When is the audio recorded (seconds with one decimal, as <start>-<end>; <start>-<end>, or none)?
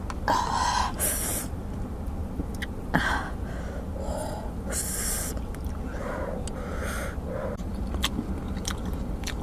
0.0-9.4